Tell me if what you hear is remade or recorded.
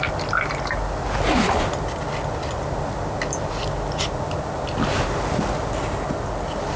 recorded